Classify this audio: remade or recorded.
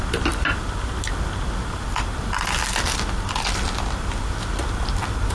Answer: recorded